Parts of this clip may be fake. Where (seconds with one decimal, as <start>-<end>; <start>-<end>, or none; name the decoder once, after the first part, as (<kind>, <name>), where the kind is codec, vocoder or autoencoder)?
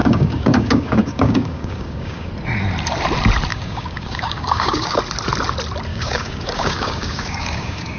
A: 0.0-2.3 (codec, DAC); 3.5-5.0; 5.9-8.0